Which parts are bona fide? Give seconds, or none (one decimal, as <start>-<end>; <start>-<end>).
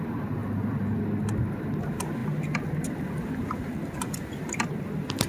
0.0-0.4; 1.0-5.3